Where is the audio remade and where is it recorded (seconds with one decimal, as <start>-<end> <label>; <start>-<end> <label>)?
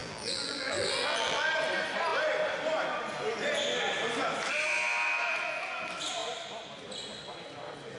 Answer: 0.0-1.5 remade; 1.5-8.0 recorded